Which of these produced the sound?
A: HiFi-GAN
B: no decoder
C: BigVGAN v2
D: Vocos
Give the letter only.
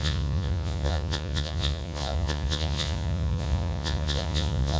D